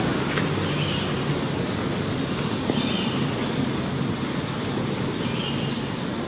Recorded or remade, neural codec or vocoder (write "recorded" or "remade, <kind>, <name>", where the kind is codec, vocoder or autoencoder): recorded